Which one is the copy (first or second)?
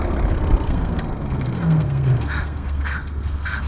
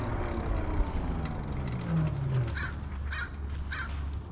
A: first